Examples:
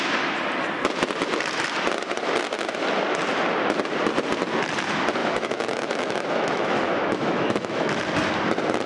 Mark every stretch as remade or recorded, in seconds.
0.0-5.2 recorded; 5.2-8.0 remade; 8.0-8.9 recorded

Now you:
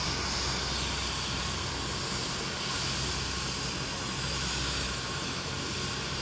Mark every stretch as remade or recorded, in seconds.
0.0-3.9 recorded; 3.9-5.5 remade; 5.5-6.2 recorded

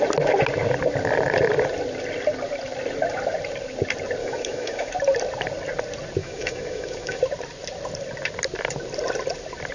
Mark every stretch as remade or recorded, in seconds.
0.0-4.2 recorded; 4.2-4.9 remade; 4.9-6.2 recorded; 6.2-7.2 remade; 7.2-9.7 recorded

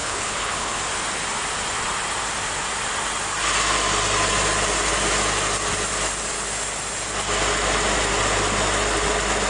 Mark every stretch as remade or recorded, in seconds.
0.0-0.8 remade; 0.8-9.5 recorded